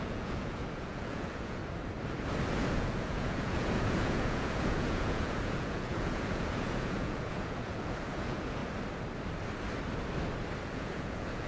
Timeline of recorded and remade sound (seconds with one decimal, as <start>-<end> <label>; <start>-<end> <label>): 0.0-1.6 remade; 1.6-2.5 recorded; 2.5-8.6 remade; 8.6-10.7 recorded; 10.7-11.5 remade